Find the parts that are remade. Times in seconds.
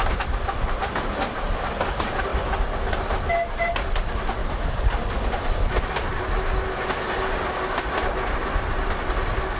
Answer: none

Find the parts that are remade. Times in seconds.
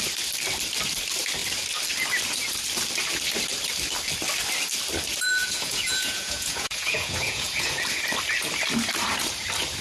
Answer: 5.4-7.7 (vocoder, Vocos)